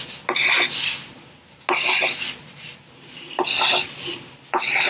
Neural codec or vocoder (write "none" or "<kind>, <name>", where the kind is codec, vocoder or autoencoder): none